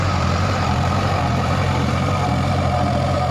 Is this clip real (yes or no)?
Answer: no